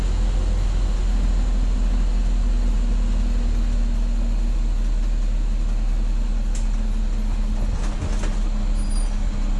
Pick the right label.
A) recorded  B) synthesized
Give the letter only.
A